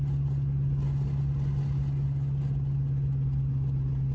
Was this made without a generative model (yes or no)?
yes